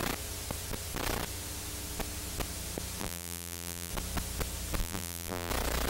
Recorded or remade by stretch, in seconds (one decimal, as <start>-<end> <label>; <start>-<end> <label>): 0.0-3.0 recorded; 3.0-3.9 remade; 3.9-4.8 recorded; 4.8-5.5 remade; 5.5-5.9 recorded